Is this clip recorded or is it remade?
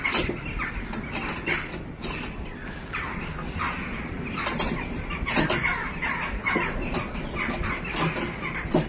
recorded